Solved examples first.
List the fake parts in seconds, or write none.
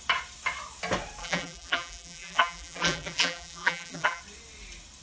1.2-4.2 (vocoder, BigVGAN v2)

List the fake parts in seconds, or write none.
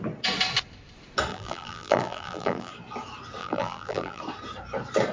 1.3-2.7 (vocoder, BigVGAN v2); 3.4-4.2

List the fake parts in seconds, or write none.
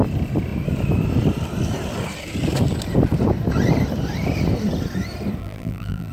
5.4-6.1 (vocoder, BigVGAN v2)